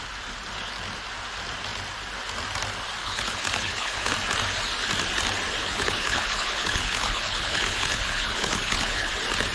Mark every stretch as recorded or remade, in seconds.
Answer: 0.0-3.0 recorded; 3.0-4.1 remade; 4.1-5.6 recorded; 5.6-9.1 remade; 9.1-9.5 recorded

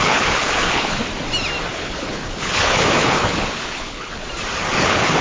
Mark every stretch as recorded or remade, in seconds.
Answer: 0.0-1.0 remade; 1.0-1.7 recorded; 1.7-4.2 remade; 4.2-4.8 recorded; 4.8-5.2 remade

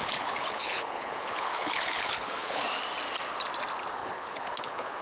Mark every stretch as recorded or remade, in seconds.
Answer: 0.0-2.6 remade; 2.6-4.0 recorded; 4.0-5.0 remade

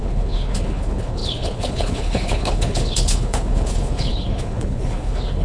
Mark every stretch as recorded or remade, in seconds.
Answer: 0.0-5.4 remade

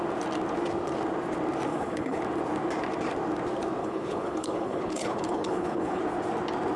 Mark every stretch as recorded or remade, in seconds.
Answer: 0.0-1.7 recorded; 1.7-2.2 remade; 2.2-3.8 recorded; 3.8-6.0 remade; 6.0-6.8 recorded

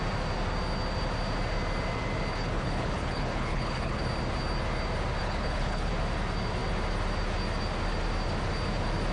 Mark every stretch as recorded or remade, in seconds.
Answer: 0.0-2.3 recorded; 2.3-4.0 remade; 4.0-5.2 recorded; 5.2-5.9 remade; 5.9-9.1 recorded